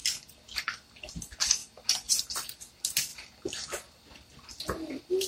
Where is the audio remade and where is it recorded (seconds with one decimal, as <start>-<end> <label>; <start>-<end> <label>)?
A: 0.0-5.3 recorded